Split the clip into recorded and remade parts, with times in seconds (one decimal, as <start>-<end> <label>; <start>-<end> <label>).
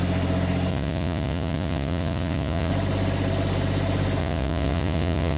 0.0-0.7 recorded; 0.7-2.7 remade; 2.7-4.2 recorded; 4.2-5.4 remade